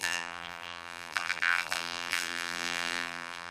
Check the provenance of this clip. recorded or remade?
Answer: remade